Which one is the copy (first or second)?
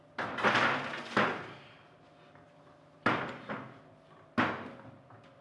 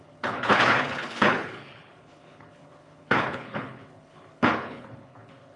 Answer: second